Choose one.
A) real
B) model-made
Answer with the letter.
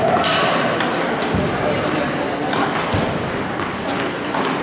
A